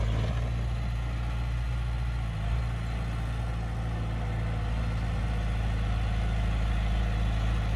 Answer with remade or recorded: recorded